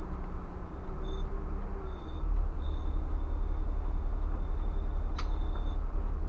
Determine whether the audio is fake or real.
real